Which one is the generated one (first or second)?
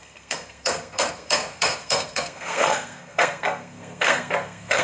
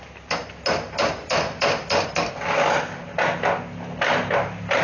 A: first